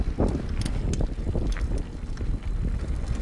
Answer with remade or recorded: recorded